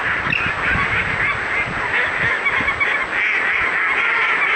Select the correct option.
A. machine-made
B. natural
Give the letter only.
B